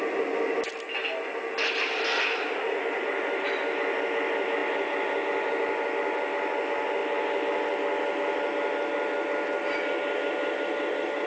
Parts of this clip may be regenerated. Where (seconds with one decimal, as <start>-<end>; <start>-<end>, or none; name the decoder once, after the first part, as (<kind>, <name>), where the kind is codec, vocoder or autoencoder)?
2.9-3.5 (vocoder, BigVGAN v2)